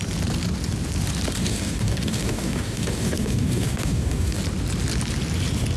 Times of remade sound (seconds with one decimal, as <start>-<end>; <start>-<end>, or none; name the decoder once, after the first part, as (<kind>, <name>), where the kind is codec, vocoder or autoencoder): 1.4-4.4 (codec, DAC)